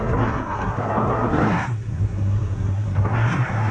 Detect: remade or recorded remade